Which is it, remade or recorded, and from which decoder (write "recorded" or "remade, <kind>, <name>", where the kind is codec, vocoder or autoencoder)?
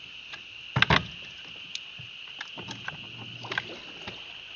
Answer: recorded